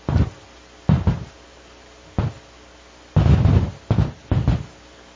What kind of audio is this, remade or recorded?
recorded